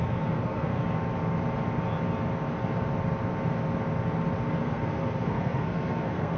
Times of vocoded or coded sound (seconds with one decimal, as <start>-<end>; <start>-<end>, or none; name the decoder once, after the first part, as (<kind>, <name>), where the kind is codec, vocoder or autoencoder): 0.0-0.8 (codec, SNAC); 4.6-6.4